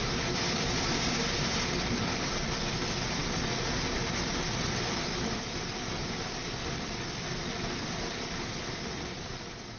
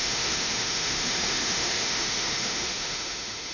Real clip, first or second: first